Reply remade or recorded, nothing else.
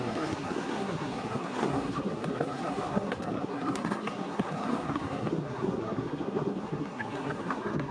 remade